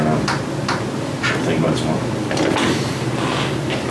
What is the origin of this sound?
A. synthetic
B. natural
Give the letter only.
B